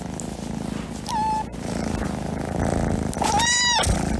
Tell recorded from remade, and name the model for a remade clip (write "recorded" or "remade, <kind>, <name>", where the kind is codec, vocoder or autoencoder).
recorded